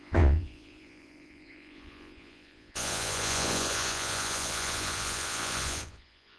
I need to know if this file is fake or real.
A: fake